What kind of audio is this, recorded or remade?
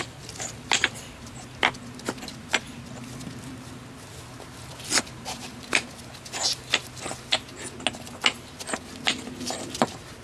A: recorded